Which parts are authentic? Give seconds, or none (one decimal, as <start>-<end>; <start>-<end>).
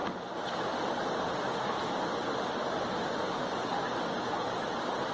none